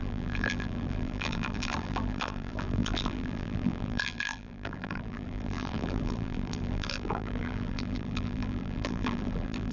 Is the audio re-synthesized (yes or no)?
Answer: yes